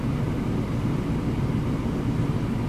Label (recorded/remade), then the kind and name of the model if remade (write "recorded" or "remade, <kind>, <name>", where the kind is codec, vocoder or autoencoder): recorded